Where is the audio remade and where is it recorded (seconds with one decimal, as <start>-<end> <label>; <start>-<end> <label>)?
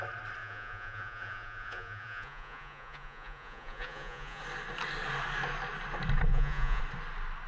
0.0-0.4 recorded; 0.4-4.4 remade; 4.4-6.3 recorded; 6.3-6.8 remade; 6.8-7.5 recorded